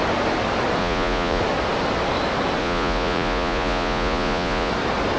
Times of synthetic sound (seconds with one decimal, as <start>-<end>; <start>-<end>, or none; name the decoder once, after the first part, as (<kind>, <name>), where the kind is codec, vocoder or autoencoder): 0.8-1.4 (vocoder, Vocos); 2.6-4.7